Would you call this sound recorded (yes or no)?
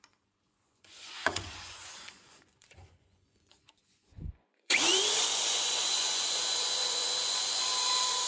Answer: no